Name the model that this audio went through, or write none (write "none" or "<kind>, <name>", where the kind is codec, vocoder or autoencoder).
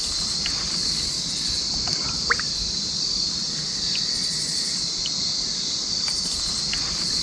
none